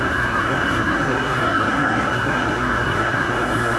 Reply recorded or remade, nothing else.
remade